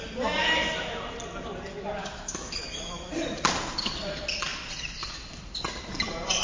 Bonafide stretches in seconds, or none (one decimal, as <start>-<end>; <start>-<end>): 0.0-0.4; 1.0-2.0; 3.1-6.4

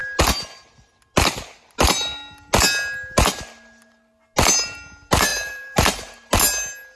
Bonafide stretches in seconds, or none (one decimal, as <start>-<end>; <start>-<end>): 0.0-5.3; 6.3-7.0

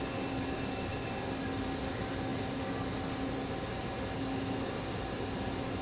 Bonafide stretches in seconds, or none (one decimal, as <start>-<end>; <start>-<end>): 0.0-5.8

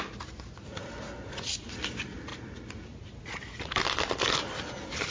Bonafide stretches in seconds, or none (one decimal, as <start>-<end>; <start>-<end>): 0.0-5.1

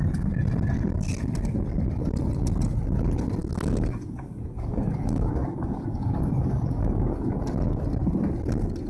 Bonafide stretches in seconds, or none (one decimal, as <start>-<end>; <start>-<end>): 0.0-3.4; 7.4-8.9

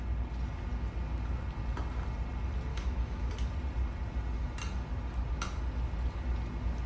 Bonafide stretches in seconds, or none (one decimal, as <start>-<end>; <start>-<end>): 0.0-2.7; 3.3-6.9

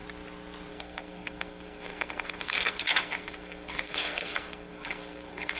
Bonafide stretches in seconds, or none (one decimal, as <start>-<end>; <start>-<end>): 0.0-0.7